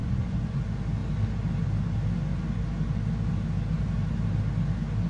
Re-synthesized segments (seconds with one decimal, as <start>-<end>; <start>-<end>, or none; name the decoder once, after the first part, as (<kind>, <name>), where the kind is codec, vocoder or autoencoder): 0.0-0.6 (vocoder, Vocos)